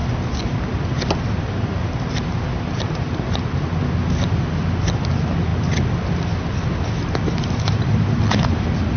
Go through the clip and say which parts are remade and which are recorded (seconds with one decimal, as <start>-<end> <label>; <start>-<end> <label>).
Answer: 0.0-9.0 recorded